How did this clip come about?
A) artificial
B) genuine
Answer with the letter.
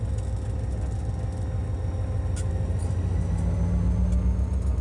B